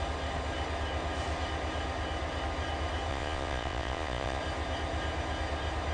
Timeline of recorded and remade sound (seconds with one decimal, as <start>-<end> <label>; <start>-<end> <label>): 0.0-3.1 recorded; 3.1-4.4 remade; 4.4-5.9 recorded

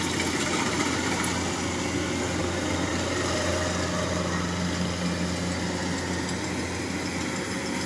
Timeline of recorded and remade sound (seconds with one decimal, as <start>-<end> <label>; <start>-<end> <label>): 0.0-7.9 recorded

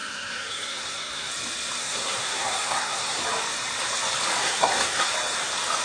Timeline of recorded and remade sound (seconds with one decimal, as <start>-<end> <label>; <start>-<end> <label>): 0.0-1.3 remade; 1.3-1.8 recorded; 1.8-3.2 remade; 3.2-4.4 recorded; 4.4-5.1 remade; 5.1-5.8 recorded

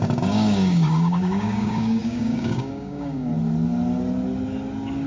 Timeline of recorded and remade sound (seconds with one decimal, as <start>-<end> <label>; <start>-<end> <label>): 0.0-3.3 remade; 3.3-5.1 recorded